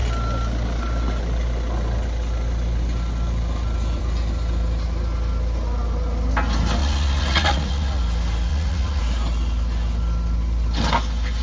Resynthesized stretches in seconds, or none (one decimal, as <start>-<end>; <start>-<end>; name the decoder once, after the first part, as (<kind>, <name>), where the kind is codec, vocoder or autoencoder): 6.8-8.0 (vocoder, Vocos); 8.5-9.0